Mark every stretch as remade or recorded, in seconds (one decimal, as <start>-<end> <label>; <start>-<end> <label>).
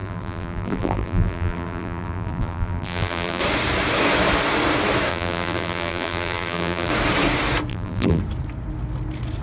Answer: 0.0-3.4 remade; 3.4-5.1 recorded; 5.1-6.9 remade; 6.9-7.7 recorded; 7.7-8.2 remade; 8.2-9.4 recorded